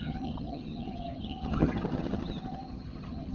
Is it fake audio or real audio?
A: fake